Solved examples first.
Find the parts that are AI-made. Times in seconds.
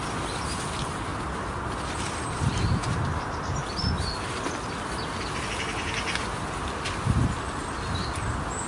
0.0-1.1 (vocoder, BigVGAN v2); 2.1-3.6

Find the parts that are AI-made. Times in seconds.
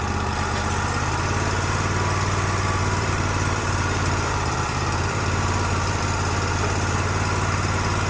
2.8-6.0 (vocoder, BigVGAN v2)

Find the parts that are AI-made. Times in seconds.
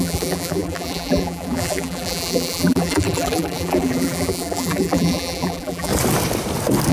0.0-5.9 (vocoder, BigVGAN v2)